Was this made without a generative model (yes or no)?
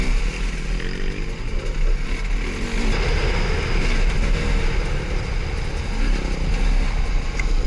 yes